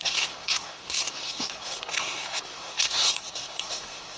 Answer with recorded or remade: remade